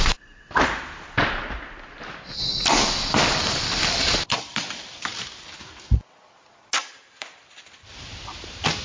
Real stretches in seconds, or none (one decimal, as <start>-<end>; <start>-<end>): 2.5-3.3; 5.1-7.2